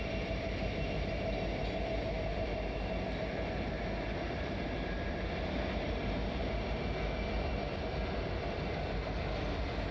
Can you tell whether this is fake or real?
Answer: fake